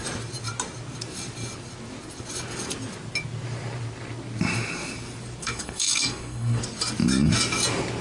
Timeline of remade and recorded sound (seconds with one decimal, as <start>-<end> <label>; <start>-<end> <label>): 0.0-5.4 recorded; 5.4-6.6 remade; 6.6-8.0 recorded